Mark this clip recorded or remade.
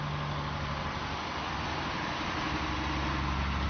recorded